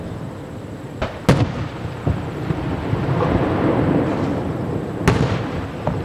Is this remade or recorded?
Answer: recorded